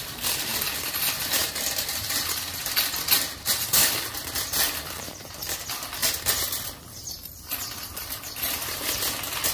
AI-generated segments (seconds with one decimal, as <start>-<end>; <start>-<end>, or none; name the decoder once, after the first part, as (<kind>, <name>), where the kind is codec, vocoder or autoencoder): none